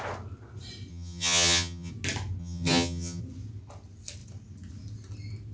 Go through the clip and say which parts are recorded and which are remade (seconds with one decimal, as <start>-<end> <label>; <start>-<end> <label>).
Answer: 0.0-0.9 recorded; 0.9-1.9 remade; 1.9-2.4 recorded; 2.4-3.2 remade; 3.2-5.5 recorded